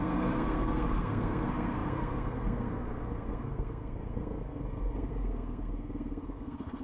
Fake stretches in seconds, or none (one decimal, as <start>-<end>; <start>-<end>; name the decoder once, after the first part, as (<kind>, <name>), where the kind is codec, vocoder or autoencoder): 0.0-6.8 (codec, SNAC)